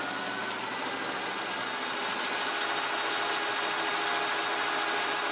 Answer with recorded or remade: recorded